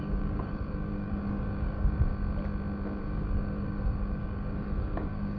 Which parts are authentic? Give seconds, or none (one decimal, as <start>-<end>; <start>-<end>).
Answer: 2.1-3.0